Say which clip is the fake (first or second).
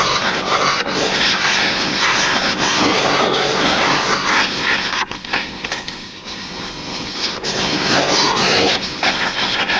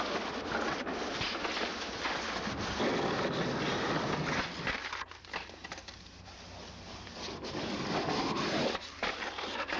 first